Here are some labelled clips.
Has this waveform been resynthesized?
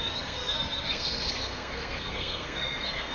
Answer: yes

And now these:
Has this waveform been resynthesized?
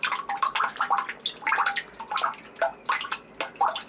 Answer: no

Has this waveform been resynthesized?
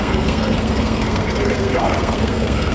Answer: yes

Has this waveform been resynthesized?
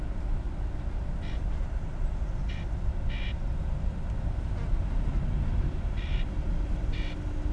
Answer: no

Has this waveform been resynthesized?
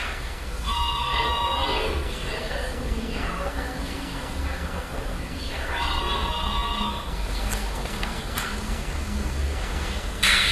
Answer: yes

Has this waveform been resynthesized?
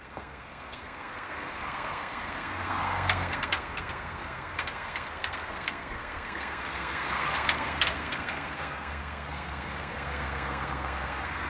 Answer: yes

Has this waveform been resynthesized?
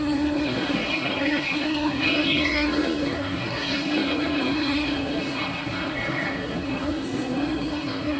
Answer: yes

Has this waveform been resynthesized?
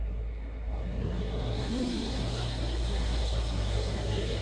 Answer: yes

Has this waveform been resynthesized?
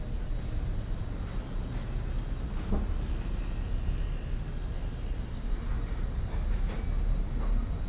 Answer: no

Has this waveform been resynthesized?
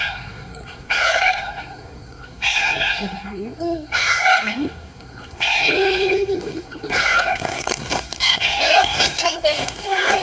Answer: yes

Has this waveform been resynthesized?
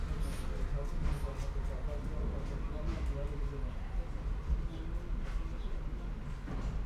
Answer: no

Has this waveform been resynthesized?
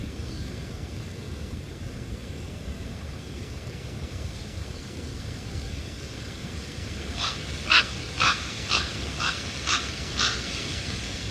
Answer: yes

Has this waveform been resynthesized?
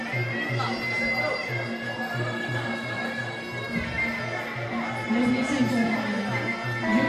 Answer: no